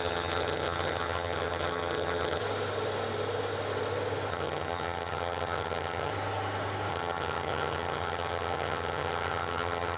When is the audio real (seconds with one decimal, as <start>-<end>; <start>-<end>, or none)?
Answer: 2.4-4.3; 6.1-6.9